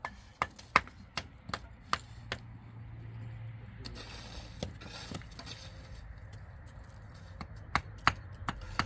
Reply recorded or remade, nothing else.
recorded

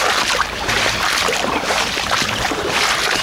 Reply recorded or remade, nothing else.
recorded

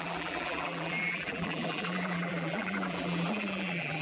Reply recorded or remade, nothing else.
remade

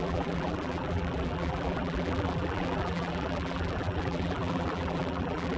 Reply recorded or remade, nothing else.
remade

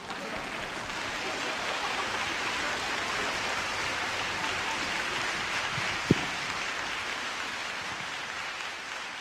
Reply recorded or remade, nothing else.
recorded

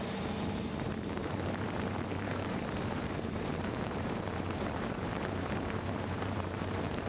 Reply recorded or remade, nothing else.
remade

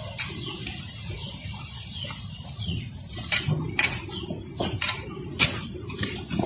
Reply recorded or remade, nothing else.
recorded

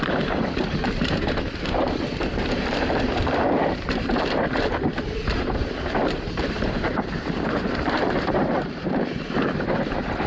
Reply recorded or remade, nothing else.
remade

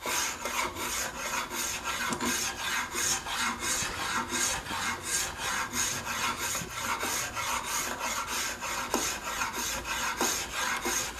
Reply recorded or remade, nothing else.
recorded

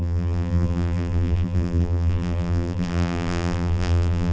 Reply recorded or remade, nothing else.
remade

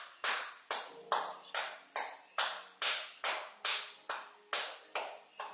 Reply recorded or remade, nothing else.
recorded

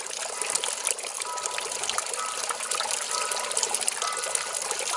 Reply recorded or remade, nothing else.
recorded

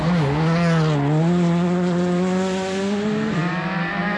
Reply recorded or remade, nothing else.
recorded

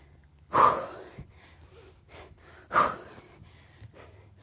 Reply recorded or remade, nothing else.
recorded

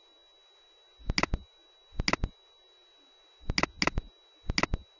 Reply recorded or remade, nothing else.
recorded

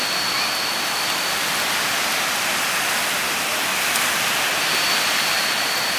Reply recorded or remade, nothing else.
remade